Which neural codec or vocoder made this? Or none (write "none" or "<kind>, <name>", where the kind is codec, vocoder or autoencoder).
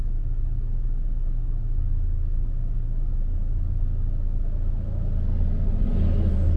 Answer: none